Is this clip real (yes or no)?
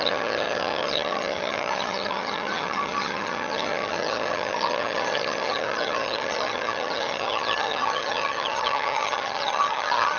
no